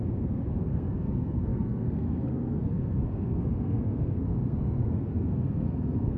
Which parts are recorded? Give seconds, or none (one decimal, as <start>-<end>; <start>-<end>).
none